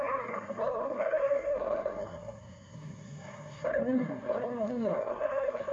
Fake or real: fake